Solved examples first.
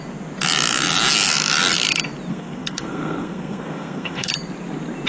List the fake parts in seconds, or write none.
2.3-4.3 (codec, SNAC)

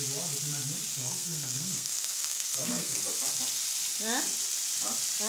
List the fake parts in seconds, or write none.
0.9-3.0 (codec, SNAC)

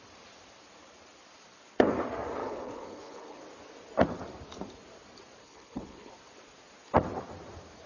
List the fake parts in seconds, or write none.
2.4-3.4 (codec, HILCodec); 5.4-6.1

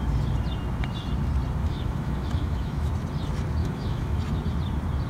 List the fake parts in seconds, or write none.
1.6-2.9 (autoencoder, DAC-VAE); 3.6-4.2

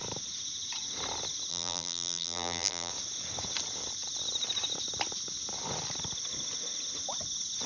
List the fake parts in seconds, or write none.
1.5-2.9 (vocoder, BigVGAN v2)

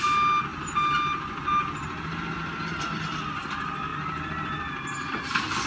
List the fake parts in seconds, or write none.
none

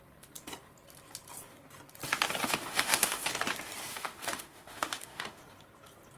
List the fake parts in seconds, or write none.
2.4-3.3 (autoencoder, DAC-VAE); 3.9-5.4

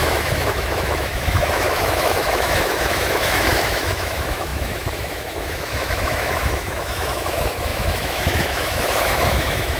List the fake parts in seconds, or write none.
0.0-9.8 (autoencoder, DAC-VAE)